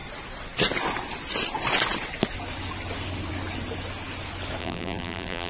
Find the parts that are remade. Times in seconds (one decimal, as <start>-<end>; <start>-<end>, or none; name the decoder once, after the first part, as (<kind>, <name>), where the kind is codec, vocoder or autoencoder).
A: 4.6-5.5 (vocoder, BigVGAN v2)